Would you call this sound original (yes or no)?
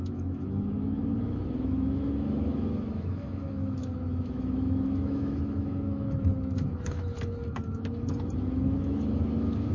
no